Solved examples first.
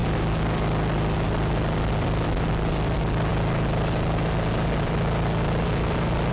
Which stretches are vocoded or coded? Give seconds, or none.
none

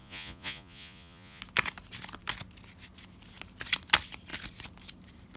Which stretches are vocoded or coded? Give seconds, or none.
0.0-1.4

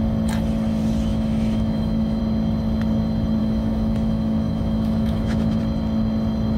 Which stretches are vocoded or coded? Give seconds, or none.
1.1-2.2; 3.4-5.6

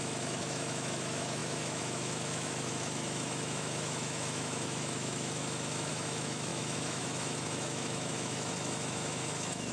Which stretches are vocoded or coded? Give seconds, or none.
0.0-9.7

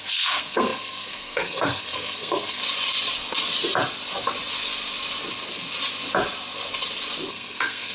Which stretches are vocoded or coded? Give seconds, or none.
0.0-2.6; 7.3-7.9

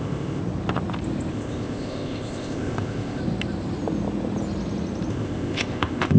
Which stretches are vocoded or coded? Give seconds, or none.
0.0-0.4; 1.3-3.2; 5.1-6.2

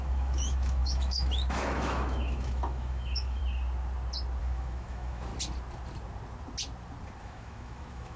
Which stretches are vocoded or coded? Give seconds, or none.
0.0-3.4; 4.4-5.3; 7.2-8.2

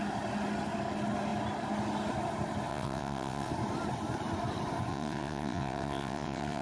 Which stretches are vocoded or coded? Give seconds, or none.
2.7-3.5; 4.9-6.6